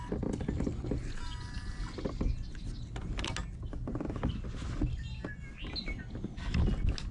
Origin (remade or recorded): recorded